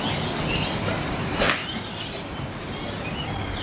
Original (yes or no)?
yes